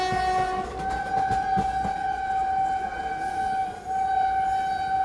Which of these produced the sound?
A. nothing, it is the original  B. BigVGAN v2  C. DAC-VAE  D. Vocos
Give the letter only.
A